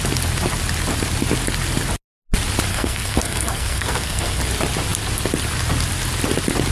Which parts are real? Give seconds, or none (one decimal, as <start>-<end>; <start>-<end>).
0.0-2.7; 4.4-6.7